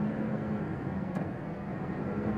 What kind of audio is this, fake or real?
fake